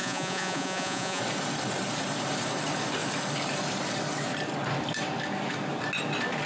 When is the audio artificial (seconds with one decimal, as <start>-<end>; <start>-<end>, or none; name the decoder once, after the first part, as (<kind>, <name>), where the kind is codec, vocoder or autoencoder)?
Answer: 0.0-1.2 (vocoder, Vocos)

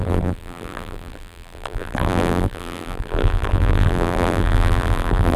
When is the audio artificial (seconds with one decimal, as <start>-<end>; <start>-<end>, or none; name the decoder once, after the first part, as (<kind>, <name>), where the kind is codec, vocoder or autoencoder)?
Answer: 0.0-5.4 (vocoder, BigVGAN v2)

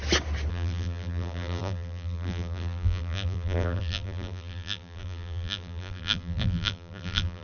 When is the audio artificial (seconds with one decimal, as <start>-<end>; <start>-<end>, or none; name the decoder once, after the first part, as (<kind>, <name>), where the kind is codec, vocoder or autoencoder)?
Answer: 0.5-7.4 (vocoder, BigVGAN v2)

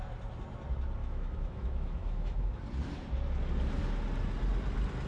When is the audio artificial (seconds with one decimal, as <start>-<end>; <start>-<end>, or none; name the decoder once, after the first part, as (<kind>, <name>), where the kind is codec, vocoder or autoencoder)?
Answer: 1.0-2.6 (autoencoder, DAC-VAE)

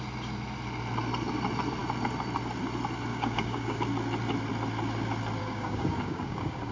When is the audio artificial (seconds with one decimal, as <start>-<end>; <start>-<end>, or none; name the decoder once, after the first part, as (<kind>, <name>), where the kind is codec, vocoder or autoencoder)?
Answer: 3.1-3.8 (codec, DAC); 5.4-6.7